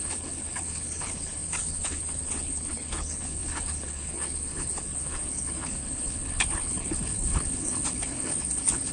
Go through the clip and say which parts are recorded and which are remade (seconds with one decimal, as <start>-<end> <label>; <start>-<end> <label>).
0.0-8.9 remade

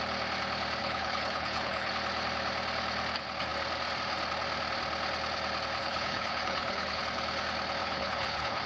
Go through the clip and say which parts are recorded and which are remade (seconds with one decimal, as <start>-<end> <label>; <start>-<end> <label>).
0.0-0.8 recorded; 0.8-1.9 remade; 1.9-5.8 recorded; 5.8-7.0 remade; 7.0-7.8 recorded; 7.8-8.7 remade

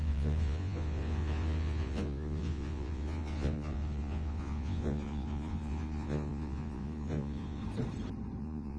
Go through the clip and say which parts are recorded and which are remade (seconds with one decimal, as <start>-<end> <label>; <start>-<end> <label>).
0.0-7.6 remade; 7.6-8.4 recorded; 8.4-8.8 remade

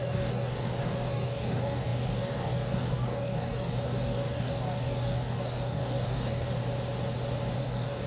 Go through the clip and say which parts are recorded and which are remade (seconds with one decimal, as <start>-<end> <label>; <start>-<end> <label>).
0.0-6.6 remade; 6.6-7.6 recorded; 7.6-8.1 remade

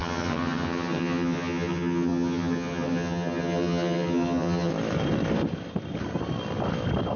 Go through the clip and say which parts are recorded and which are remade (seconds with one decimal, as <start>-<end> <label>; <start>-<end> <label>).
0.0-4.7 remade; 4.7-7.2 recorded

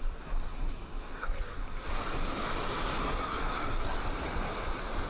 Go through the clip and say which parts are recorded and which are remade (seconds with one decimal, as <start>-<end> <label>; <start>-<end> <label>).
0.0-1.9 remade; 1.9-3.0 recorded; 3.0-4.0 remade; 4.0-5.1 recorded

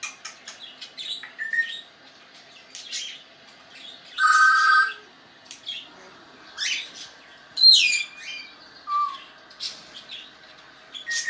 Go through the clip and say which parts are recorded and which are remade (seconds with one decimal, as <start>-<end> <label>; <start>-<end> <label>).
0.0-11.3 recorded

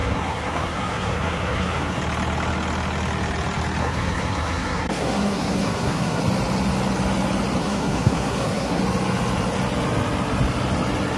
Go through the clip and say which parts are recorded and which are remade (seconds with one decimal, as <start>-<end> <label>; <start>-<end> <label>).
0.0-2.0 remade; 2.0-3.8 recorded; 3.8-6.2 remade; 6.2-7.6 recorded; 7.6-8.8 remade; 8.8-11.2 recorded